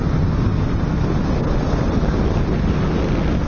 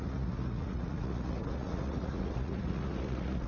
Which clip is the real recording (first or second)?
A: first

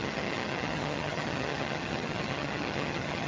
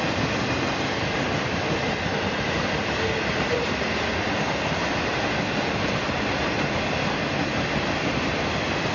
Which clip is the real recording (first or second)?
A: second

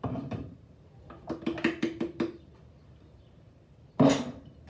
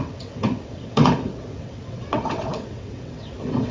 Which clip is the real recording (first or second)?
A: first